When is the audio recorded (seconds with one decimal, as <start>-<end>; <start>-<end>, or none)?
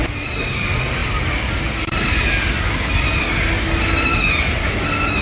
0.0-5.2